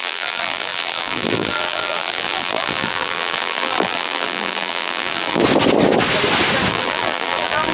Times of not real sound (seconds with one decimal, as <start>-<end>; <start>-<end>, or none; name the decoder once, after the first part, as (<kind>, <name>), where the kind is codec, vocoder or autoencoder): 0.0-5.4 (vocoder, BigVGAN v2); 6.7-7.7